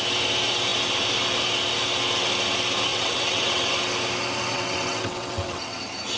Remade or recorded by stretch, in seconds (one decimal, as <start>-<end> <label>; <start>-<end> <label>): 0.0-2.9 recorded; 2.9-3.7 remade; 3.7-4.5 recorded; 4.5-5.8 remade; 5.8-6.2 recorded